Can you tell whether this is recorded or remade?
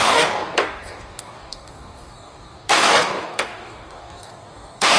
remade